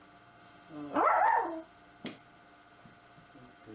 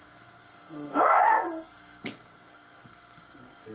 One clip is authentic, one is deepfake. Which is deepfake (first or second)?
second